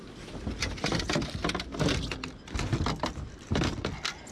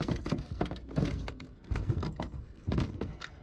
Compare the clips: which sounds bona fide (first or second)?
first